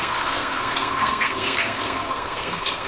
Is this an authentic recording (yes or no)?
no